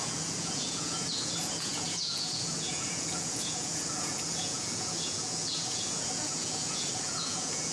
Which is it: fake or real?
fake